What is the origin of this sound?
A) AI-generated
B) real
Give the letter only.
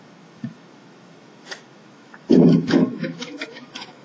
A